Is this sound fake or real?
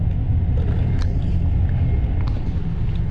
real